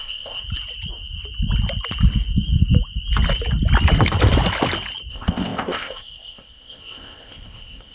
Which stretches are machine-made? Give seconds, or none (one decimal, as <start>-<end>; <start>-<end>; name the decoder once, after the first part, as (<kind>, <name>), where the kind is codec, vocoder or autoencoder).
0.0-0.4 (codec, ZipCodec); 5.1-7.9